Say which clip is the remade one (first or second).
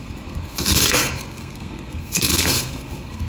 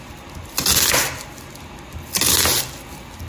first